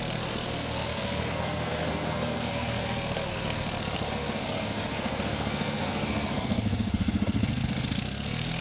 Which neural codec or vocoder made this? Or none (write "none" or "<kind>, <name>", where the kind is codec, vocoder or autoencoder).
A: codec, SNAC